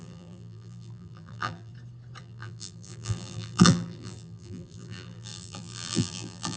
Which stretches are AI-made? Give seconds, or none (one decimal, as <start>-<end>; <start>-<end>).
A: 0.0-1.7; 2.2-6.6